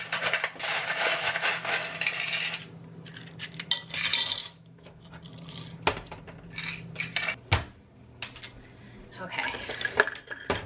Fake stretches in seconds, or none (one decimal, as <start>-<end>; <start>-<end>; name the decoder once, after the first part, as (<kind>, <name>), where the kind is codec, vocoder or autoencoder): 0.7-1.8 (autoencoder, DAC-VAE); 4.4-5.1

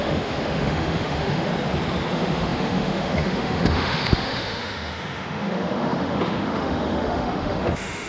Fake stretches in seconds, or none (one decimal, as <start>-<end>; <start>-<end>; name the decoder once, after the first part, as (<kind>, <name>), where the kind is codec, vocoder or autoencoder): 0.0-1.5 (autoencoder, DAC-VAE); 2.1-8.1

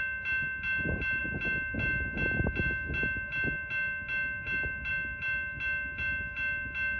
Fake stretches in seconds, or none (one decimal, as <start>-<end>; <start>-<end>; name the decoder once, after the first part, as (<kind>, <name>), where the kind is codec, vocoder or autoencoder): none

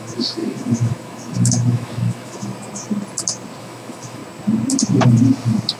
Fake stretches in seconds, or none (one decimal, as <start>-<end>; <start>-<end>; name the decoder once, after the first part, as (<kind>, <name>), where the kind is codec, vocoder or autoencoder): 0.0-2.5 (autoencoder, DAC-VAE); 3.6-4.2

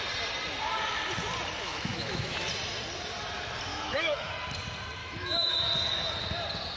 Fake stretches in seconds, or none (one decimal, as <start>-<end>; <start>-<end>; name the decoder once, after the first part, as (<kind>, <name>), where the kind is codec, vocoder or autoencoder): 1.6-2.5 (autoencoder, DAC-VAE); 3.7-4.3; 5.0-5.7

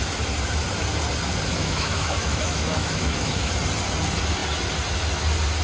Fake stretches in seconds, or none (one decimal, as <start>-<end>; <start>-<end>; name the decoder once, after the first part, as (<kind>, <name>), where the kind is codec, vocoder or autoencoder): 1.5-3.5 (autoencoder, DAC-VAE)